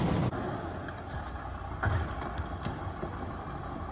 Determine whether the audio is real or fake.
real